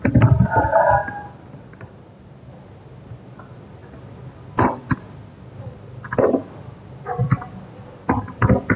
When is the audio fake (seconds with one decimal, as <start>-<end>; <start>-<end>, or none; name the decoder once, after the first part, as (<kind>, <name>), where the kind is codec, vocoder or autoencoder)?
0.0-3.8 (vocoder, BigVGAN v2); 6.2-8.8